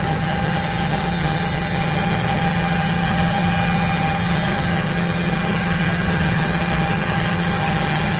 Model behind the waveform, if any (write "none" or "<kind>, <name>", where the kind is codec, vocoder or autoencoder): vocoder, HiFi-GAN